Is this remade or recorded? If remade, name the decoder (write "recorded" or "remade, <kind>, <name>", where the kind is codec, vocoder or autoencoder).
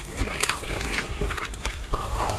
remade, codec, SNAC